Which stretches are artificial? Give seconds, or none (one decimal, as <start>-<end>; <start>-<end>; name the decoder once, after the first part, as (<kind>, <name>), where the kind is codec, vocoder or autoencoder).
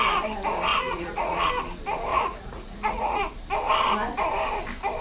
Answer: 0.7-1.5 (vocoder, Vocos); 2.1-3.2